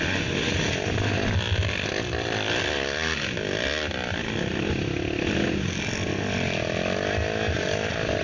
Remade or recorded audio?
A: recorded